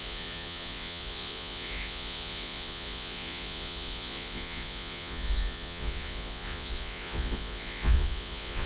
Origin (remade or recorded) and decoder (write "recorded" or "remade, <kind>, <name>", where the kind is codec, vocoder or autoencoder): remade, vocoder, Vocos